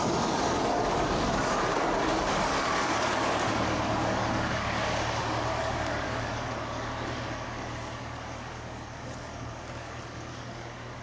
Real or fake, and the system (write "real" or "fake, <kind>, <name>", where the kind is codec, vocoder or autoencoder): fake, codec, DAC